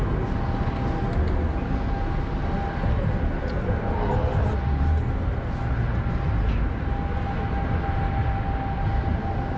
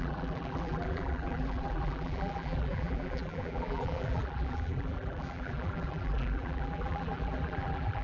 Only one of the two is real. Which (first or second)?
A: first